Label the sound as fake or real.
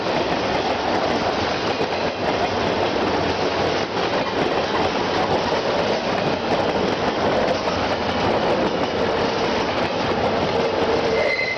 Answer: real